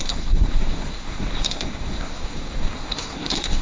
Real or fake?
fake